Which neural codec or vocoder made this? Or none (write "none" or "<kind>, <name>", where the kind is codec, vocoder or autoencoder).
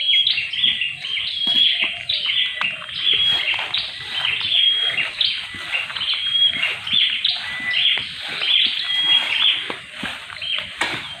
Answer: none